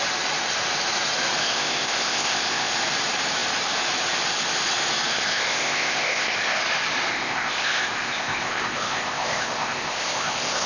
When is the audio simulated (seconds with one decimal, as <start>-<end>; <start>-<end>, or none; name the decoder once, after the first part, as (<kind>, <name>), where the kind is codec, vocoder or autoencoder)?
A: 1.4-2.7 (codec, ZipCodec); 5.1-6.6; 7.1-10.7